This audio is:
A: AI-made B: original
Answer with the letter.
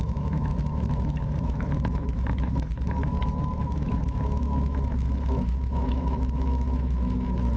A